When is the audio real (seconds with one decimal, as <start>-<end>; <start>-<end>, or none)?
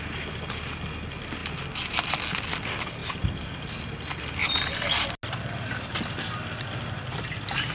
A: 0.0-4.4; 4.9-7.7